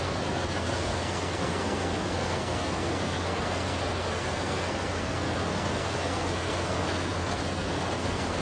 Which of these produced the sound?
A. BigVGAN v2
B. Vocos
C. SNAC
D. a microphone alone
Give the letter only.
C